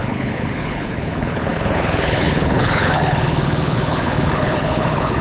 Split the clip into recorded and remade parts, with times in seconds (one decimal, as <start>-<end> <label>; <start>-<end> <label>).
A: 0.0-5.2 remade